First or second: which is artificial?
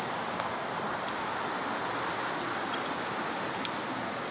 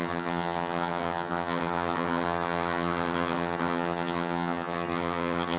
second